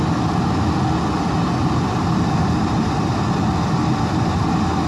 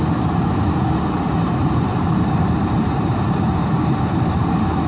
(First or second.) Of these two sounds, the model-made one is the second